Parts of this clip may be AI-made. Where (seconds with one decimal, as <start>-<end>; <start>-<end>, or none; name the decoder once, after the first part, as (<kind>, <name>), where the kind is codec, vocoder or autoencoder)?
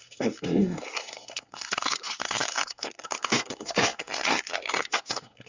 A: 0.0-5.5 (codec, SNAC)